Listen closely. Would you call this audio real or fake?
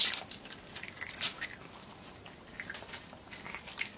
real